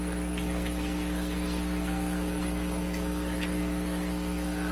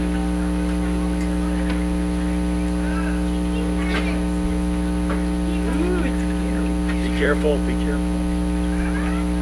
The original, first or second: second